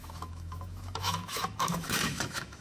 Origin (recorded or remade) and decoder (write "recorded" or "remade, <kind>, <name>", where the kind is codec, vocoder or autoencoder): remade, autoencoder, DAC-VAE